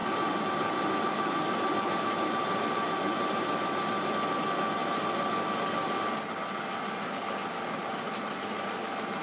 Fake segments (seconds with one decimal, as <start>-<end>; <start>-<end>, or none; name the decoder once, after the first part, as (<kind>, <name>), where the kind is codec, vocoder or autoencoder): 0.0-4.1 (vocoder, BigVGAN v2); 4.8-6.0